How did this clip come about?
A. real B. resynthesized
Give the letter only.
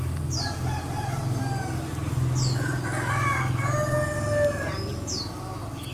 A